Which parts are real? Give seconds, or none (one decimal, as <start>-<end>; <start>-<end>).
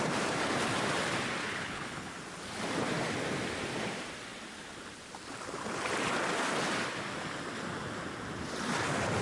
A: 0.0-1.4; 2.1-9.2